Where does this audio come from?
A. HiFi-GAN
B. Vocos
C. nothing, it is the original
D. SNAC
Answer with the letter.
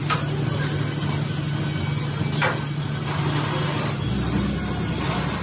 C